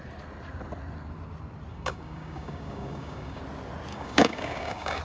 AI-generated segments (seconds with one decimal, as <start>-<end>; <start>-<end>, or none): 1.7-3.4; 3.9-5.0